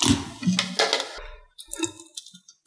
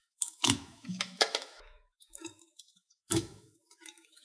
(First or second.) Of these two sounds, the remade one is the second